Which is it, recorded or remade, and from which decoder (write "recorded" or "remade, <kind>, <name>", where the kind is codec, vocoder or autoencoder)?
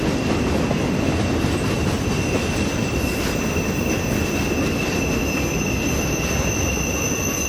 recorded